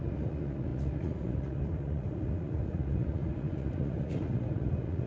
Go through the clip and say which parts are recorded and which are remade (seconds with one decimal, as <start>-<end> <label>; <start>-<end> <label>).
0.0-5.1 remade